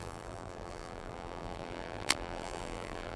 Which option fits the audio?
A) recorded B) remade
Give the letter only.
B